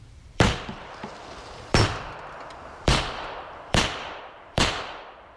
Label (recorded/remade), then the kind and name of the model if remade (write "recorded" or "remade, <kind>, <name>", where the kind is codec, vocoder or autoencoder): remade, vocoder, BigVGAN v2